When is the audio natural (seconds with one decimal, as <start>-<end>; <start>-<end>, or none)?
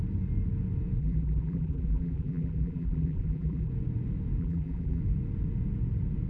0.0-1.0; 3.7-4.4; 5.0-6.3